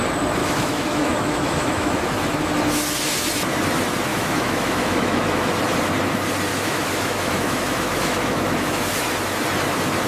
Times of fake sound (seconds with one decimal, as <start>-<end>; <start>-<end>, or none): 0.4-2.0; 4.1-5.5; 6.5-8.9